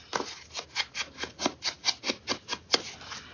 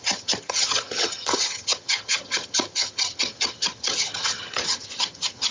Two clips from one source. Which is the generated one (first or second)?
second